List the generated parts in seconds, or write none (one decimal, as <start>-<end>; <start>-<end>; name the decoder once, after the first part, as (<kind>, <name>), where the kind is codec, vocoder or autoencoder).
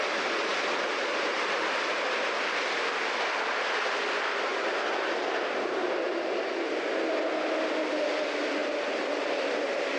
none